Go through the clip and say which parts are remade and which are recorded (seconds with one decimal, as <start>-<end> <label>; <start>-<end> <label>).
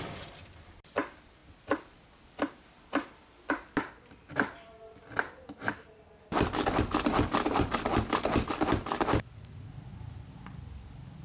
0.0-11.2 recorded